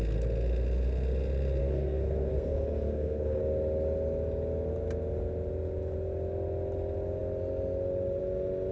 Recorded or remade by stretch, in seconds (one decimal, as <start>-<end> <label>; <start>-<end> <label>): 0.0-1.6 recorded; 1.6-3.4 remade; 3.4-8.7 recorded